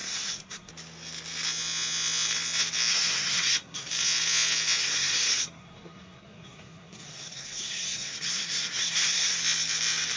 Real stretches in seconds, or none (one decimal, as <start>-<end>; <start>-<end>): 0.7-2.9; 3.9-4.8; 9.4-10.2

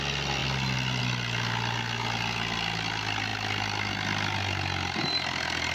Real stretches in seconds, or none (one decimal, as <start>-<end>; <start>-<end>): 0.0-5.7